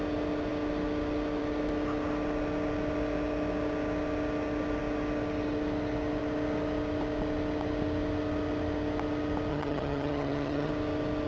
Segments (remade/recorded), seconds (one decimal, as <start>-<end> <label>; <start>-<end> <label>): 0.0-9.5 recorded; 9.5-10.7 remade; 10.7-11.3 recorded